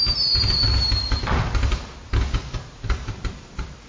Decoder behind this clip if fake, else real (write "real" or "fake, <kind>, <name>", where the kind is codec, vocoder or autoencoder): real